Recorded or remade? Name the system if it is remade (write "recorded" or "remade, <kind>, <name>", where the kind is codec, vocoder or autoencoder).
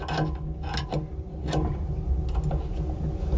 recorded